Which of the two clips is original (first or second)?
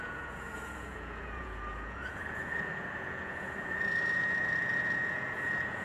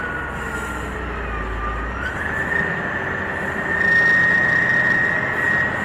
second